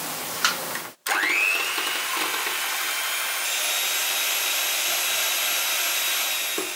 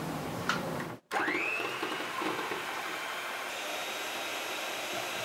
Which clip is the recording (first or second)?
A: first